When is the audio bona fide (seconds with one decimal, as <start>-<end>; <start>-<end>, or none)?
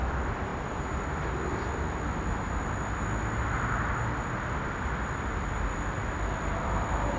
0.0-7.2